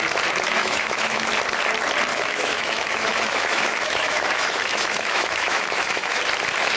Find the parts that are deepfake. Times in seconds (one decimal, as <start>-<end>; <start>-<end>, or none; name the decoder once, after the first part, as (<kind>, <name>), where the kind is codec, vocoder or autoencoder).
0.6-1.3 (autoencoder, DAC-VAE); 2.1-6.2